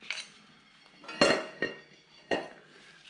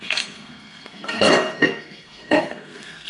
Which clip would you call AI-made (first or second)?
second